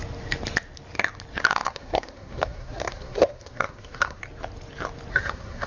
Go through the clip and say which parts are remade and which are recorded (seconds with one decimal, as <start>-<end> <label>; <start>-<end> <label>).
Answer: 0.0-1.5 recorded; 1.5-4.2 remade; 4.2-5.1 recorded; 5.1-5.7 remade